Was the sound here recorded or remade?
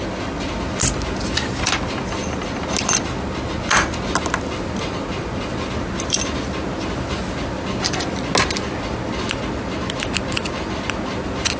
recorded